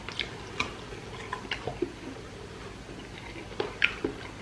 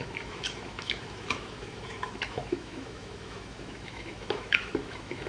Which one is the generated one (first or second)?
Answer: second